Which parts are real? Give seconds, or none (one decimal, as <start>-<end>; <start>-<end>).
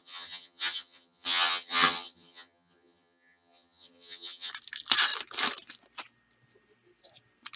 4.5-7.6